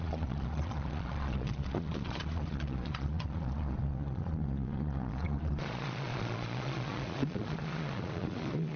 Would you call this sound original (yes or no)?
no